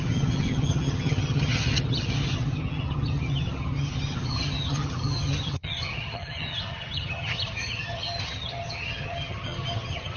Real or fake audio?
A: fake